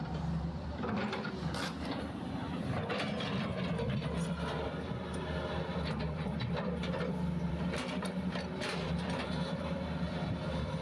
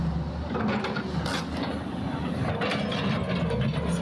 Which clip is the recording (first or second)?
second